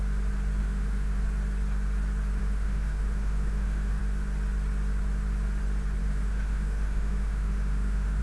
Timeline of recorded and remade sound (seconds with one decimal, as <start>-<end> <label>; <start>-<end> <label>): 0.0-0.6 recorded; 0.6-1.2 remade; 1.2-2.4 recorded; 2.4-4.0 remade; 4.0-6.0 recorded; 6.0-8.2 remade